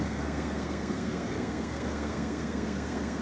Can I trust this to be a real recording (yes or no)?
no